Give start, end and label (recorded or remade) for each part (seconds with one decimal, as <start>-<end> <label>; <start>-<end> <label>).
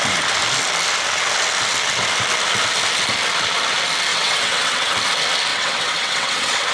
0.0-4.1 recorded; 4.1-4.9 remade; 4.9-5.5 recorded; 5.5-6.7 remade